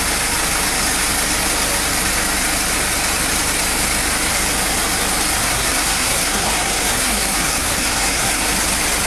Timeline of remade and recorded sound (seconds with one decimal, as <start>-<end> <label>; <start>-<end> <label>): 0.0-5.4 recorded; 5.4-8.4 remade; 8.4-9.1 recorded